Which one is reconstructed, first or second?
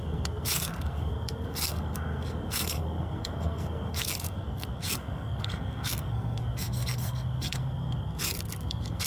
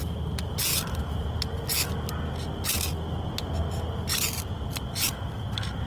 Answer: first